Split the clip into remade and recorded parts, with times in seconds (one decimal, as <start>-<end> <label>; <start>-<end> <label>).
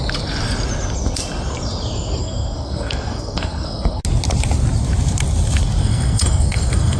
0.0-2.2 recorded; 2.2-4.0 remade; 4.0-5.8 recorded; 5.8-7.0 remade